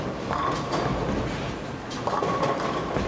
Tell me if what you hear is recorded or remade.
recorded